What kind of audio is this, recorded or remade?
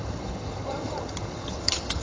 remade